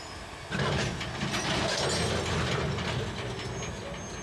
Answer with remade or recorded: recorded